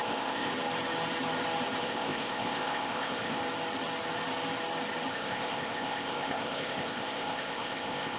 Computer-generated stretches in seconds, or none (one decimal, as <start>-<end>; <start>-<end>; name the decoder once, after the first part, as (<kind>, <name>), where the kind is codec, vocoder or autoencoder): 0.0-0.5 (codec, ZipCodec); 1.8-3.4; 5.1-8.2